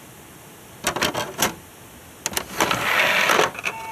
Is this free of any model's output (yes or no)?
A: yes